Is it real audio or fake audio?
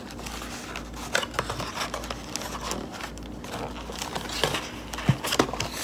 real